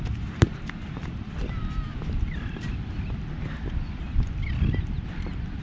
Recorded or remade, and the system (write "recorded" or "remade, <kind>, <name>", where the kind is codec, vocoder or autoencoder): recorded